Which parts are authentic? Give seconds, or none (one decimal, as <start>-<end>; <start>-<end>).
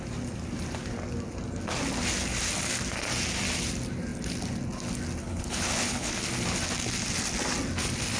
0.0-5.2; 6.1-8.2